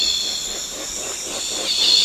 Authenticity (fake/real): fake